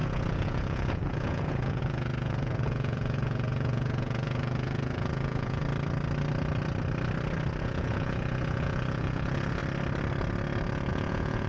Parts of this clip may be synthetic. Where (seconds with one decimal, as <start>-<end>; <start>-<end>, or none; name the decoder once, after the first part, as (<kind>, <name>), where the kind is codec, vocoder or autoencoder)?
0.0-5.6 (vocoder, Vocos); 7.6-9.6; 10.9-11.5